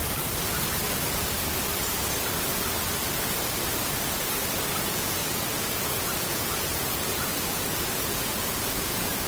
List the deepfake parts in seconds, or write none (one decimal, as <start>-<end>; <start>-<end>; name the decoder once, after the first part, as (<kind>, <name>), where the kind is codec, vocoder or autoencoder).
4.8-9.3 (vocoder, Vocos)